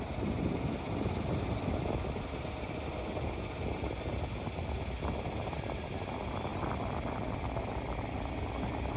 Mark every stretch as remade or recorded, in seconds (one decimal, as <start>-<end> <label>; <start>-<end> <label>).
0.0-9.0 recorded